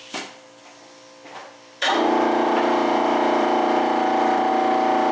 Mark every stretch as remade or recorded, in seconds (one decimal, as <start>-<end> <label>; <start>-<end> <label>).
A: 0.0-0.6 remade; 0.6-1.4 recorded; 1.4-4.5 remade; 4.5-5.1 recorded